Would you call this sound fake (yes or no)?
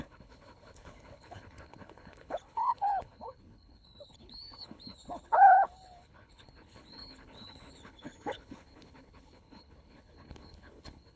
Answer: yes